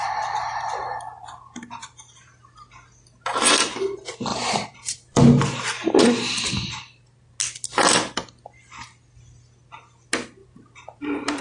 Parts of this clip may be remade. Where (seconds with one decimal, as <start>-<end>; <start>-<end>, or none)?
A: 4.3-5.2; 10.4-11.4